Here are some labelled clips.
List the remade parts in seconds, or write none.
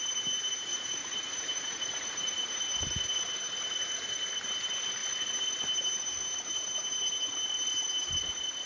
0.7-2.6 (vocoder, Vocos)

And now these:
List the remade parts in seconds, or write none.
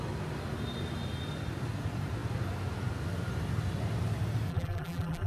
4.5-5.3 (vocoder, BigVGAN v2)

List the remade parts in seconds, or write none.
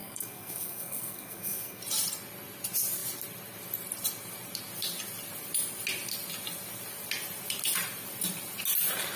0.0-1.8 (codec, SNAC)